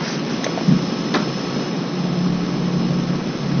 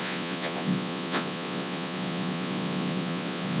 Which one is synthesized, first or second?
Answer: second